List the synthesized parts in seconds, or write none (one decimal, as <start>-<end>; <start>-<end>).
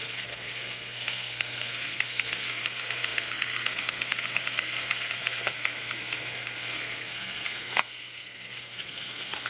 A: 0.0-9.5